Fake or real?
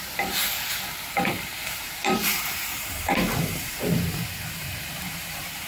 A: fake